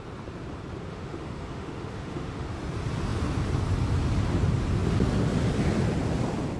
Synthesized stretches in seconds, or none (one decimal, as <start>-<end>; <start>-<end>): 0.9-2.6